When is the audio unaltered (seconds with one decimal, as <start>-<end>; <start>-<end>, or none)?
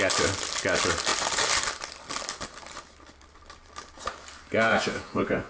0.0-4.7